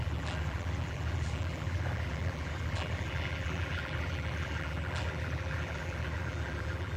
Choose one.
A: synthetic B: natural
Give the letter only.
A